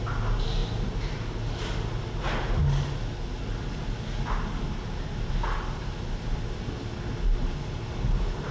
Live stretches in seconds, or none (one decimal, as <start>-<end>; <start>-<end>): 0.0-8.5